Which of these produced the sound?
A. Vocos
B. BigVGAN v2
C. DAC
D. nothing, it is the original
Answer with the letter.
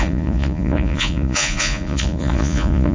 A